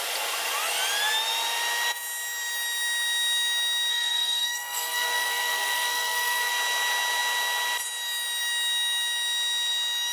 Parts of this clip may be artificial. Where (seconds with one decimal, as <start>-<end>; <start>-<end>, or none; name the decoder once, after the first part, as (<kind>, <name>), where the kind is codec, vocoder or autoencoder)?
3.9-6.5 (codec, SNAC)